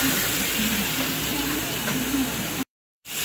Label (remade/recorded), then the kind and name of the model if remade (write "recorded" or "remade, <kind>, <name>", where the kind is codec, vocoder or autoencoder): remade, vocoder, BigVGAN v2